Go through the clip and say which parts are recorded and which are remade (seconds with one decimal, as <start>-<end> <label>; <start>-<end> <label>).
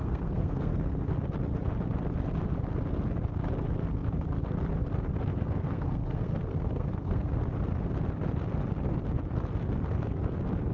0.0-1.1 remade; 1.1-5.3 recorded; 5.3-7.4 remade; 7.4-10.7 recorded